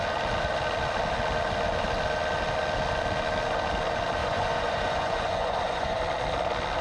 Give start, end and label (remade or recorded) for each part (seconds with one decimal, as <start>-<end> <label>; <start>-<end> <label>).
0.0-4.2 recorded; 4.2-6.0 remade; 6.0-6.8 recorded